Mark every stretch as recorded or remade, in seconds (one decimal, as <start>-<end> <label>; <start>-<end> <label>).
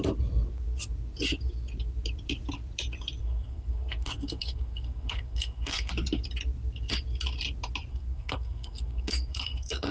0.0-3.2 recorded; 3.2-5.9 remade; 5.9-7.9 recorded; 7.9-9.9 remade